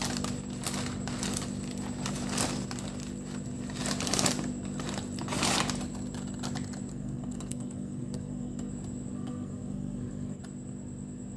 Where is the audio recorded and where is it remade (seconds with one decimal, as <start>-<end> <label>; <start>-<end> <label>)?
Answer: 0.0-6.9 recorded; 6.9-8.7 remade; 8.7-9.1 recorded; 9.1-10.4 remade; 10.4-11.4 recorded